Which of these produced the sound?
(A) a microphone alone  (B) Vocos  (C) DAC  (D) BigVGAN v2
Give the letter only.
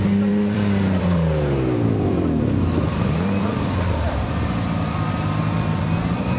D